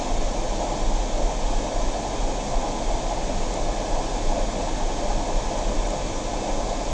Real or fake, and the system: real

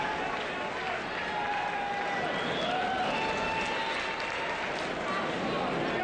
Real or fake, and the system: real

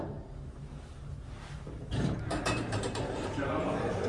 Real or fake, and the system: fake, vocoder, BigVGAN v2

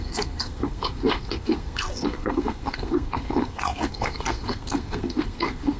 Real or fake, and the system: fake, codec, SNAC